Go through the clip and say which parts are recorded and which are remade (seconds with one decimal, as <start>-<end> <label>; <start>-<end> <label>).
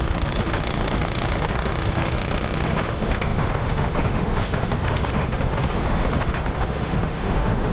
0.0-7.7 remade